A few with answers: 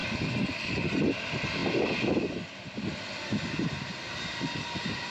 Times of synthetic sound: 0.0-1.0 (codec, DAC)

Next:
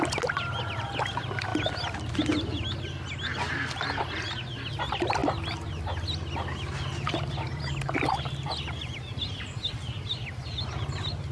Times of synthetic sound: none